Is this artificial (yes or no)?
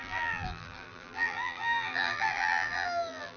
yes